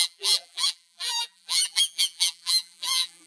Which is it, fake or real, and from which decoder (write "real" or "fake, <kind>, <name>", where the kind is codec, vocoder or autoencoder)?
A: fake, vocoder, BigVGAN v2